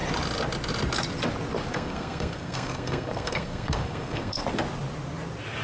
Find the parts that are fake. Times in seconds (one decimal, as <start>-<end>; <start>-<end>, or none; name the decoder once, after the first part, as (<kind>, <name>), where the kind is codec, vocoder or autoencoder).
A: 1.7-4.4 (codec, SNAC)